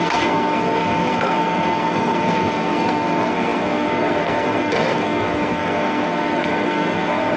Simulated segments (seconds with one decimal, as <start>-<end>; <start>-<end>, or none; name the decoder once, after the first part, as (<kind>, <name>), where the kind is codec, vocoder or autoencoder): 0.0-7.4 (codec, SNAC)